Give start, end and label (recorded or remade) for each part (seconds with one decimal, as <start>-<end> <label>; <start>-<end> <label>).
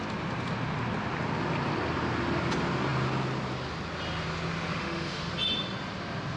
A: 0.0-4.8 recorded; 4.8-5.3 remade; 5.3-6.4 recorded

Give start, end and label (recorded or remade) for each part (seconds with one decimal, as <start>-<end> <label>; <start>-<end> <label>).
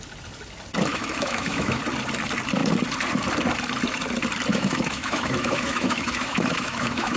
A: 0.0-0.9 recorded; 0.9-1.8 remade; 1.8-4.5 recorded; 4.5-7.2 remade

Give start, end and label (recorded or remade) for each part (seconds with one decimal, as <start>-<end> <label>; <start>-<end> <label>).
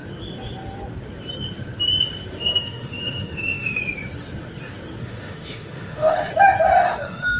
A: 0.0-2.4 recorded; 2.4-3.8 remade; 3.8-5.0 recorded; 5.0-6.3 remade; 6.3-7.0 recorded; 7.0-7.4 remade